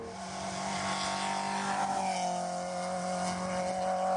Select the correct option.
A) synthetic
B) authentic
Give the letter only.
B